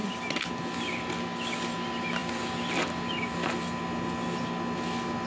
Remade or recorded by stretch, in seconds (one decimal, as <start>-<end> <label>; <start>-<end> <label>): 0.0-5.3 recorded

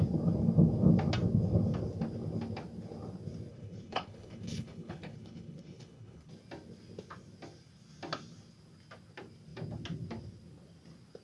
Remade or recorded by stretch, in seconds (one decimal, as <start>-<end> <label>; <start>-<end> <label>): 0.0-3.5 recorded; 3.5-6.3 remade; 6.3-11.2 recorded

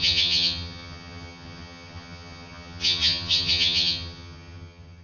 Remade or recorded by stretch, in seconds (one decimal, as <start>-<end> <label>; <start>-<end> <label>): 0.0-5.0 remade

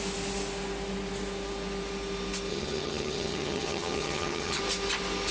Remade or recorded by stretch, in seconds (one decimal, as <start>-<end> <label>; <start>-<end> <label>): 0.0-2.5 recorded; 2.5-4.6 remade; 4.6-5.3 recorded

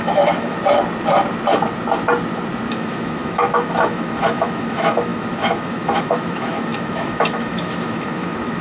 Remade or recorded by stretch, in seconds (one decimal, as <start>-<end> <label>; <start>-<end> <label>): 0.0-0.6 remade; 0.6-2.7 recorded; 2.7-8.6 remade

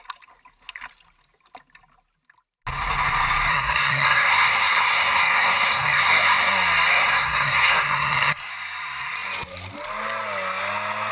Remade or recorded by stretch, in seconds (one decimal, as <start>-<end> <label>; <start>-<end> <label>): 0.0-3.5 recorded; 3.5-6.5 remade; 6.5-6.9 recorded; 6.9-8.5 remade; 8.5-11.1 recorded

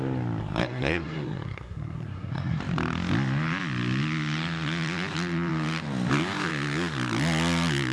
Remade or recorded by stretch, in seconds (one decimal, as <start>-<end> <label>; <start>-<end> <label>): 0.0-0.4 recorded; 0.4-2.6 remade; 2.6-7.9 recorded